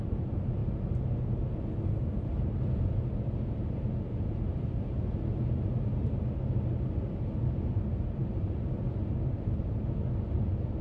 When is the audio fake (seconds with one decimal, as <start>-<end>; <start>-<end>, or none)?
none